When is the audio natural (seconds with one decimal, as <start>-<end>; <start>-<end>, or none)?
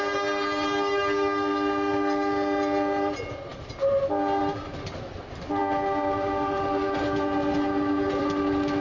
0.0-8.8